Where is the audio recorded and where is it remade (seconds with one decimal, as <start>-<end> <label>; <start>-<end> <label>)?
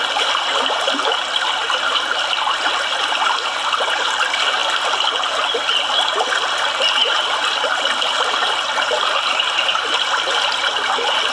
0.0-11.3 recorded